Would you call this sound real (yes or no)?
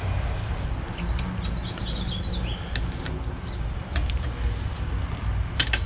yes